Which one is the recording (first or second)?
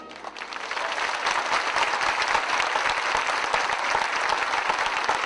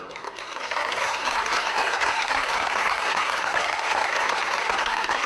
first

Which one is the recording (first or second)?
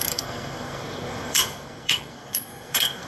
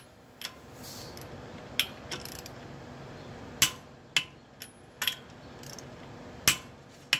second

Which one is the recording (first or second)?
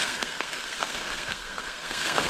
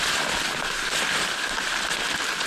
second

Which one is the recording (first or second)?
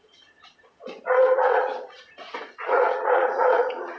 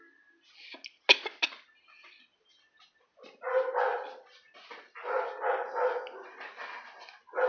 second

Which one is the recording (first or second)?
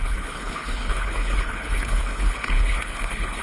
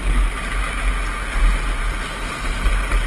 second